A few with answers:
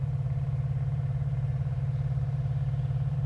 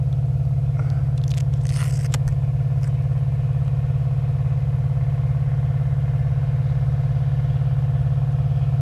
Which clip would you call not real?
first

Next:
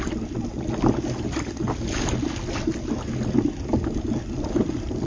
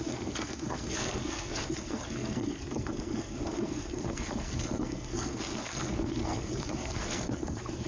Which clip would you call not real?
second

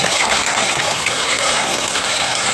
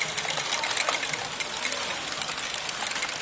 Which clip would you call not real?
first